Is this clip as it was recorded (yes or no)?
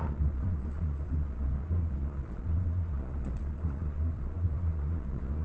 no